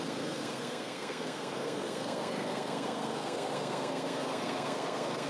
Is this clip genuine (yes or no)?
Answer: no